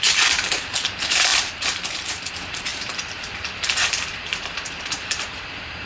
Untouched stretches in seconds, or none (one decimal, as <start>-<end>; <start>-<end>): none